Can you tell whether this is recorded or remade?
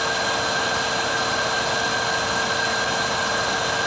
recorded